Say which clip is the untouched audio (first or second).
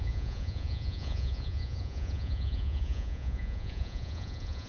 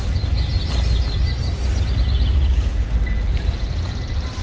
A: second